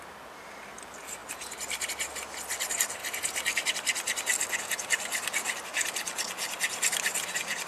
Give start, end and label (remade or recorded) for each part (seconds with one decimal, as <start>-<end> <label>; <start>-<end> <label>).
0.0-7.7 recorded